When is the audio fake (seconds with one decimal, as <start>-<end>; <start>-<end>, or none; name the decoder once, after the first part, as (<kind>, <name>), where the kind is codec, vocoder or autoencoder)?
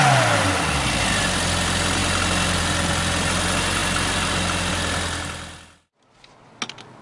none